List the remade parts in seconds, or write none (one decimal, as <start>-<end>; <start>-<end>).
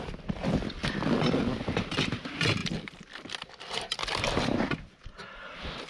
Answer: none